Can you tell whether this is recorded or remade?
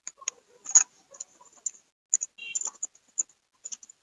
recorded